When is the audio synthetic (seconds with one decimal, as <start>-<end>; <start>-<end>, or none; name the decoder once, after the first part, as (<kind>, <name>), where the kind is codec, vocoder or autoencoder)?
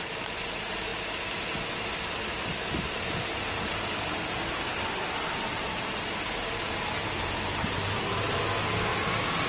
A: 5.6-6.4 (vocoder, BigVGAN v2); 7.0-8.0